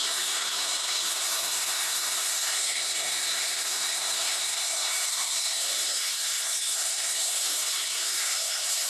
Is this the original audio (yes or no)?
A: no